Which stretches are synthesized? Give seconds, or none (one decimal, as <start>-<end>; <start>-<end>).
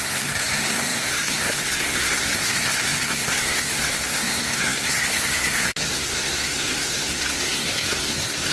0.0-8.5